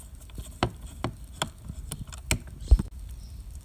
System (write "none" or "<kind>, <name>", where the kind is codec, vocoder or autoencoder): none